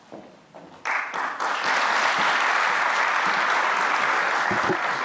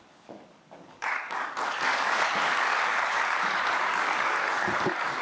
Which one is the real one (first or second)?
first